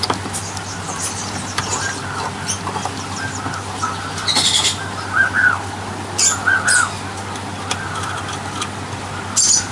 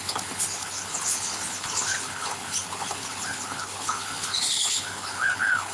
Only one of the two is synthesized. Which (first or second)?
second